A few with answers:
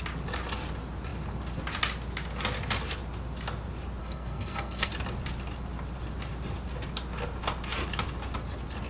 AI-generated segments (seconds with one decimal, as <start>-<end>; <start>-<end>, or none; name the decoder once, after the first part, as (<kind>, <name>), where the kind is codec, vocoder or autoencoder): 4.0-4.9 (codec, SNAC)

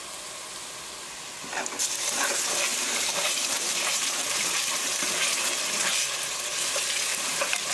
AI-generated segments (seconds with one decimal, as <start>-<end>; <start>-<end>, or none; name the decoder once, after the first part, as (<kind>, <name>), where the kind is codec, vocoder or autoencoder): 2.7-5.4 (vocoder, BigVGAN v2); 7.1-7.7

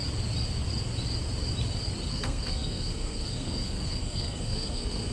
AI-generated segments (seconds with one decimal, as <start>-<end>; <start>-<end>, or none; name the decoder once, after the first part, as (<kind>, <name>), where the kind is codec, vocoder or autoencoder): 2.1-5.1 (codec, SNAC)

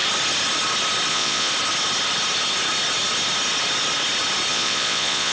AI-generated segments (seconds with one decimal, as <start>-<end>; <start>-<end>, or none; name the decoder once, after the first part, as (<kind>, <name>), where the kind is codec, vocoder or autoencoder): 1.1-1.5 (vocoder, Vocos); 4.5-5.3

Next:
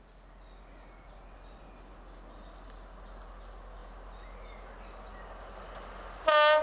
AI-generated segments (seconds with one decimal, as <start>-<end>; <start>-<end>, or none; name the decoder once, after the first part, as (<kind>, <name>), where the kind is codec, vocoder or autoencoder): none

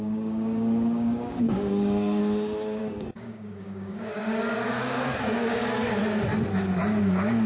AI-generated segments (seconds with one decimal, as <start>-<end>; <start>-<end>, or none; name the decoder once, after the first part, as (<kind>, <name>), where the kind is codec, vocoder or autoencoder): 0.0-2.2 (codec, DAC); 2.8-6.0; 7.0-7.5

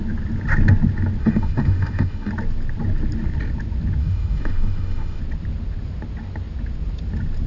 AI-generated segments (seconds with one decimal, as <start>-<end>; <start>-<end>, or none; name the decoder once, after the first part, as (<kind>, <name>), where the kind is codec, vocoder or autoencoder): 1.2-2.3 (autoencoder, DAC-VAE); 4.0-5.2

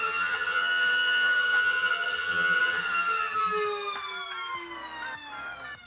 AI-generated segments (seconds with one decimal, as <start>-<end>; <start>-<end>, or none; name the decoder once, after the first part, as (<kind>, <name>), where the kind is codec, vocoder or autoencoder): 0.0-3.4 (vocoder, HiFi-GAN)